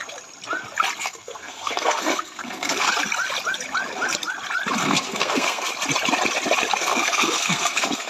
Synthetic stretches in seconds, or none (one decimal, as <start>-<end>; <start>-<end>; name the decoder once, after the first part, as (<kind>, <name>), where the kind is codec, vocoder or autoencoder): 1.0-2.9 (codec, SNAC); 4.8-5.7; 6.8-8.1